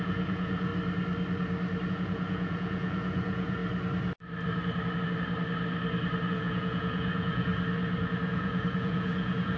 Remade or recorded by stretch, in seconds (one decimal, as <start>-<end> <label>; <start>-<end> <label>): 0.0-0.7 remade; 0.7-1.9 recorded; 1.9-3.6 remade; 3.6-6.3 recorded; 6.3-7.5 remade; 7.5-8.3 recorded; 8.3-9.6 remade